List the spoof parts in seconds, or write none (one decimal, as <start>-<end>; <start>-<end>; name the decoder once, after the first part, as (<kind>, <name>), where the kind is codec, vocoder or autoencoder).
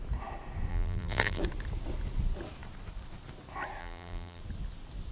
0.7-1.4 (vocoder, BigVGAN v2); 3.8-4.4